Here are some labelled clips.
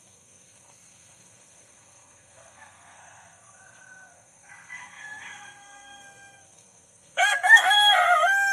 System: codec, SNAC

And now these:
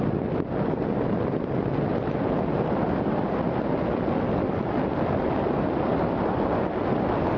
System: none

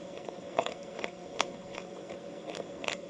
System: codec, SNAC